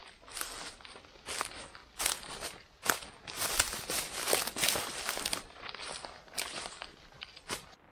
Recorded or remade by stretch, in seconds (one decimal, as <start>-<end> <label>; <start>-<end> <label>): 0.0-7.9 recorded